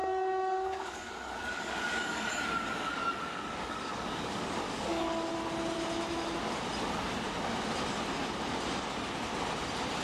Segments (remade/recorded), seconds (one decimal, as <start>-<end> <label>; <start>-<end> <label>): 0.0-5.3 remade; 5.3-10.0 recorded